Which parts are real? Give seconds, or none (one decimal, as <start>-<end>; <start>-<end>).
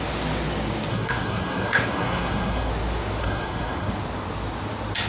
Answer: 0.0-0.9; 2.7-3.2; 3.9-5.1